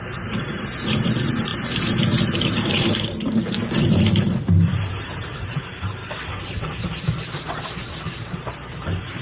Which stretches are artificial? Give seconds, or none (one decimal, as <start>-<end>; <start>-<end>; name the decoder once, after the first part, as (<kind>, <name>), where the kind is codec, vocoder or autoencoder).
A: 0.0-6.0 (vocoder, BigVGAN v2); 6.8-9.2